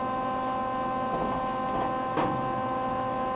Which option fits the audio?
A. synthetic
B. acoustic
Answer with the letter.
B